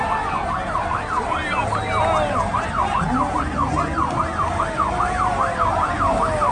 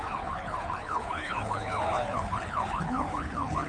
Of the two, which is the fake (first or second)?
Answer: second